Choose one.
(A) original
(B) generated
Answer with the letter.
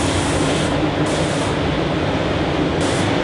A